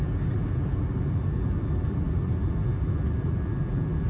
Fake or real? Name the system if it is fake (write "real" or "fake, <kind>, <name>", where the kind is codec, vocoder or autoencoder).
fake, vocoder, BigVGAN v2